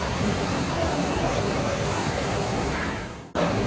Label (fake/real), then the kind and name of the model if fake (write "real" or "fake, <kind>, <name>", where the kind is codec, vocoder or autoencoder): fake, codec, SNAC